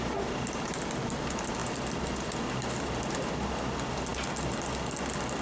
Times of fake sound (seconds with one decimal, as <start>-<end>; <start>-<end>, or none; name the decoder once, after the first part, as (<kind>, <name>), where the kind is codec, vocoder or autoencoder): none